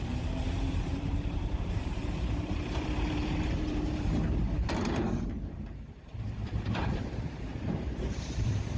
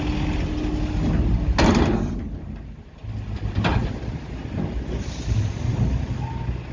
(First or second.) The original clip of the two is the second